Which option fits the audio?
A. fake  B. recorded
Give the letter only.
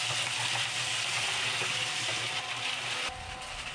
B